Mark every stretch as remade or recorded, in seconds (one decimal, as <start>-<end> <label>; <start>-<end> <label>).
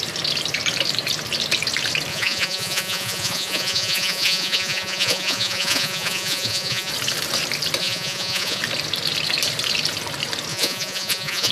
0.0-2.1 recorded; 2.1-6.9 remade; 6.9-7.8 recorded; 7.8-8.6 remade; 8.6-10.5 recorded; 10.5-11.5 remade